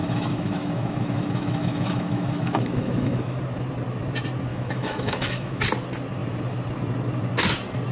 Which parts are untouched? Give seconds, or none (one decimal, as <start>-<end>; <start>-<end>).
3.4-4.5; 5.6-7.9